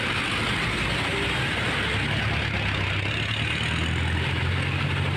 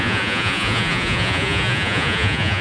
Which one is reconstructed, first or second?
second